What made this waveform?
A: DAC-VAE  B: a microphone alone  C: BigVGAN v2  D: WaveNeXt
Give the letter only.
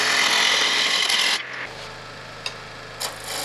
B